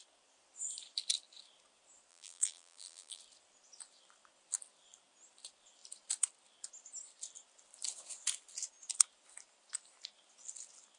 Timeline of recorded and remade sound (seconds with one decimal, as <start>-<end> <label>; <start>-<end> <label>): 0.0-2.1 recorded; 2.1-3.2 remade; 3.2-11.0 recorded